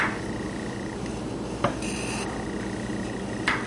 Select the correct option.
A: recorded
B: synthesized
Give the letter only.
A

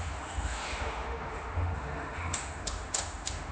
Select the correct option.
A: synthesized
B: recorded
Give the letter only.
A